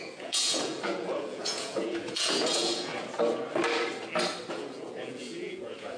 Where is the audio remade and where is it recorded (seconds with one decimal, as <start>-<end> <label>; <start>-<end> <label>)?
0.0-2.9 remade; 2.9-4.5 recorded; 4.5-6.0 remade